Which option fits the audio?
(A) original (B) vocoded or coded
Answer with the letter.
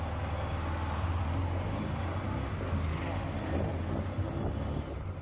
A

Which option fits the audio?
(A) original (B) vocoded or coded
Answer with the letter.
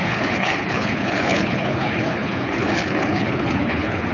B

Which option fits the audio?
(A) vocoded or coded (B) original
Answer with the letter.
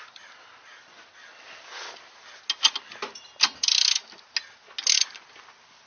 B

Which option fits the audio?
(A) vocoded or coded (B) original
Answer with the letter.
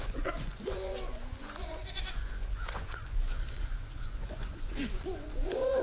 A